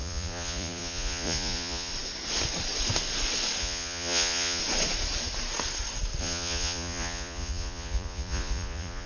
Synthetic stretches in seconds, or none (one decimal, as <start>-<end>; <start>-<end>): 0.0-1.9; 3.6-4.6; 6.2-9.1